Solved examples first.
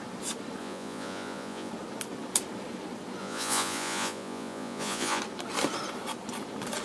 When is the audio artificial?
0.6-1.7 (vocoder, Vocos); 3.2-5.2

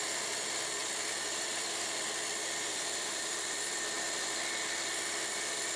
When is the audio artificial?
0.8-3.6 (vocoder, BigVGAN v2)